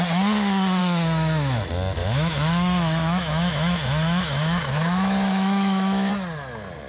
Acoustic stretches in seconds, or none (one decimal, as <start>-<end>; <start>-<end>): 0.0-0.8; 1.6-2.0; 6.1-6.9